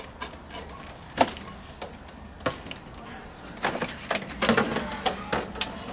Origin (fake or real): real